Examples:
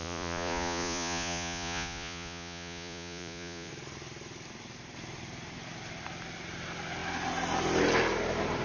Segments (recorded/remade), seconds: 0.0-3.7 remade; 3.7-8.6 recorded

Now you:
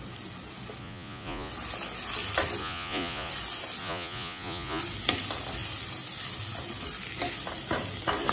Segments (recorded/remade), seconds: 0.0-0.8 recorded; 0.8-1.5 remade; 1.5-2.6 recorded; 2.6-3.3 remade; 3.3-3.8 recorded; 3.8-4.8 remade; 4.8-8.3 recorded

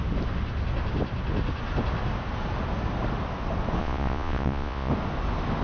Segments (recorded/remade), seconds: 0.0-3.8 recorded; 3.8-4.9 remade; 4.9-5.6 recorded

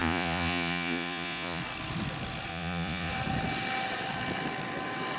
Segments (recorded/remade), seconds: 0.0-1.6 remade; 1.6-2.5 recorded; 2.5-3.1 remade; 3.1-5.2 recorded

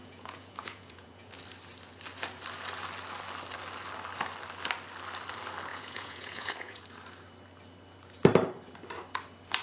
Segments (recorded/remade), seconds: 0.0-1.3 remade; 1.3-5.7 recorded; 5.7-6.8 remade; 6.8-9.6 recorded

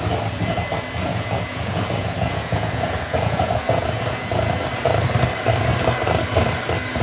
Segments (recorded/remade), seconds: 0.0-1.1 recorded; 1.1-4.3 remade; 4.3-7.0 recorded

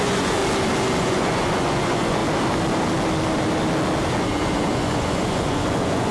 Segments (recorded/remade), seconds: 0.0-0.4 remade; 0.4-1.0 recorded; 1.0-2.2 remade; 2.2-4.2 recorded; 4.2-6.1 remade

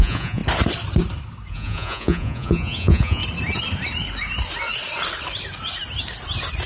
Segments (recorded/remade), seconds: 0.0-0.4 remade; 0.4-1.5 recorded; 1.5-3.2 remade; 3.2-6.7 recorded